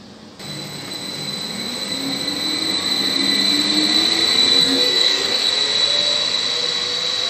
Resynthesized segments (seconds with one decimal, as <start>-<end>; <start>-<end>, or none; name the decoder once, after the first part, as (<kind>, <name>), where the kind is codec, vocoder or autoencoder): 4.6-5.5 (codec, DAC)